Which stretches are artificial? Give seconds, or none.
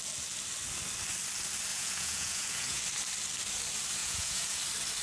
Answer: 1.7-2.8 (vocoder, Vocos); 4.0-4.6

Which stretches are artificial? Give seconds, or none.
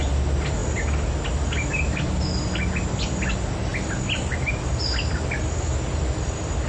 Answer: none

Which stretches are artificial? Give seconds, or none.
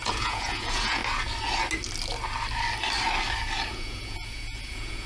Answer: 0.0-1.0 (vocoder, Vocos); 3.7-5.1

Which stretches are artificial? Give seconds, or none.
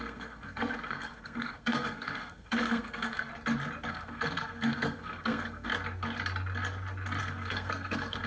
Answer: 0.0-3.3 (codec, SNAC); 3.9-5.7; 7.2-8.3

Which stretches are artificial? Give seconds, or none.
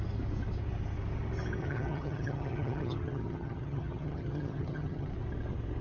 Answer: 1.6-5.1 (vocoder, HiFi-GAN)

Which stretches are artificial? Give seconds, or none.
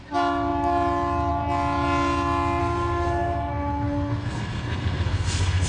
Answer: 2.6-5.7 (codec, SNAC)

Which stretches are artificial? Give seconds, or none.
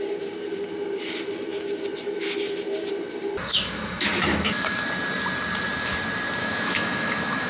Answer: 3.5-4.8 (autoencoder, DAC-VAE); 6.4-7.5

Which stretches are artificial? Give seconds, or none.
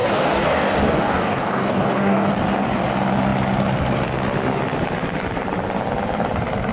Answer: 0.0-2.3 (codec, DAC)